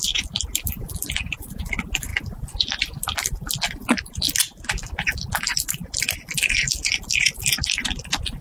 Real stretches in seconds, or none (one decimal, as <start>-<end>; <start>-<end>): 0.0-8.4